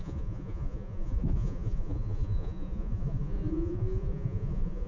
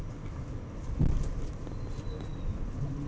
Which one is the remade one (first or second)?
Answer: first